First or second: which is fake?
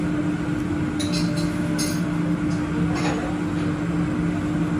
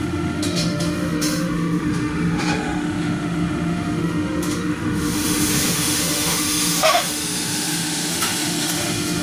second